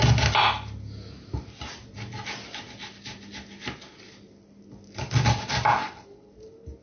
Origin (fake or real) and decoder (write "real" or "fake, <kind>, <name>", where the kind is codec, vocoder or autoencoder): real